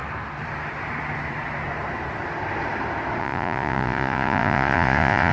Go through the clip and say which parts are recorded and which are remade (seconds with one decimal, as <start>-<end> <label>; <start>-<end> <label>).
0.0-3.2 recorded; 3.2-5.3 remade